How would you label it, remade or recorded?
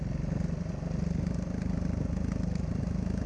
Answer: recorded